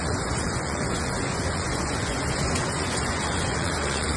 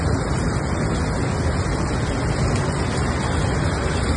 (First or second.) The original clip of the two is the second